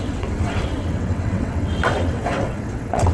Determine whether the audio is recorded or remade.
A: remade